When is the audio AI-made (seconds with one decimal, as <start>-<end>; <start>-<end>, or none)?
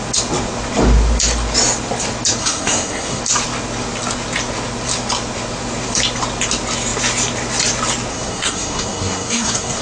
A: 2.4-3.2; 8.1-9.8